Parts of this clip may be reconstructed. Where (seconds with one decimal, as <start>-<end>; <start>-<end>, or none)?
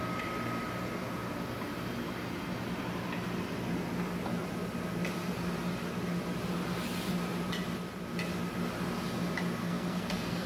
9.6-10.5